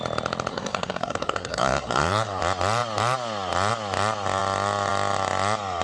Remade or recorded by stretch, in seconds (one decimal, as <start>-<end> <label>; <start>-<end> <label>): 0.0-0.5 recorded; 0.5-2.4 remade; 2.4-5.8 recorded